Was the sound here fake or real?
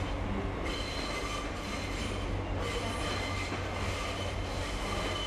real